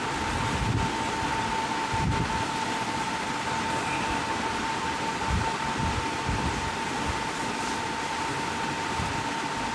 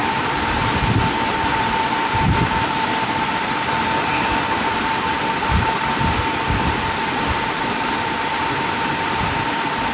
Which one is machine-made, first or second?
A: second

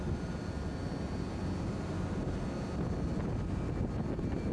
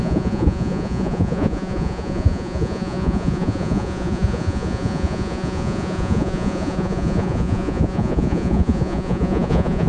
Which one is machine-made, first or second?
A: second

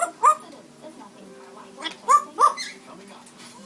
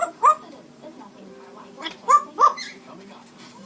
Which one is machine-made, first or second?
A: second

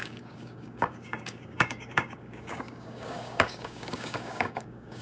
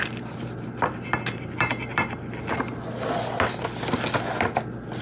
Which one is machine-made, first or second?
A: first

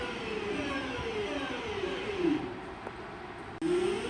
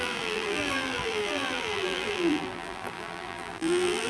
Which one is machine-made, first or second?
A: second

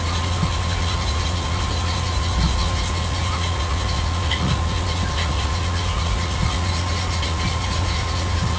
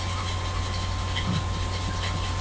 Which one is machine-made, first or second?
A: first